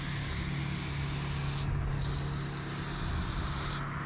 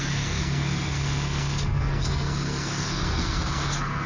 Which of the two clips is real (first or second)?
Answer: first